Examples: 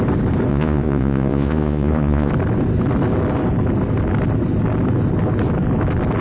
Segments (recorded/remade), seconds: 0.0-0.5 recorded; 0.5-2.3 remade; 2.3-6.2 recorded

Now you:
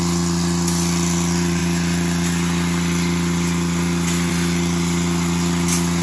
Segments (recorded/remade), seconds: 0.0-6.0 recorded

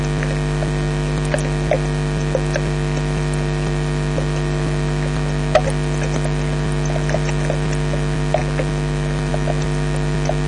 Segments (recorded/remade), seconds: 0.0-10.5 recorded

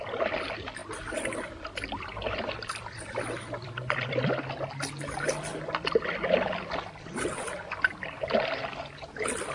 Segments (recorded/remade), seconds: 0.0-0.8 recorded; 0.8-4.2 remade; 4.2-5.5 recorded; 5.5-6.5 remade; 6.5-9.5 recorded

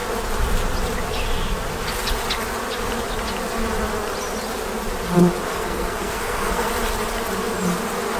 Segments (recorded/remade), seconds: 0.0-5.5 recorded; 5.5-6.7 remade; 6.7-8.2 recorded

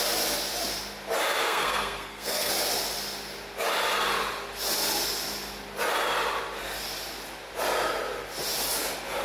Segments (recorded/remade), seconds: 0.0-1.4 recorded; 1.4-2.5 remade; 2.5-9.2 recorded